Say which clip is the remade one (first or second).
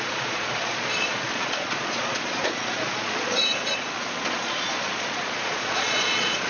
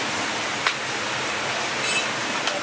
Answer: first